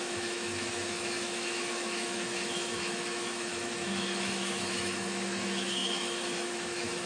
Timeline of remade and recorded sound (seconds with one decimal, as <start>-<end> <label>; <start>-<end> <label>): 0.0-7.1 remade